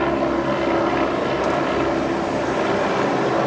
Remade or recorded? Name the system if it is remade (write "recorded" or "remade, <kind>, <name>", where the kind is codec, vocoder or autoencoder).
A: recorded